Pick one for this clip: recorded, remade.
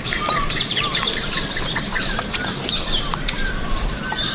remade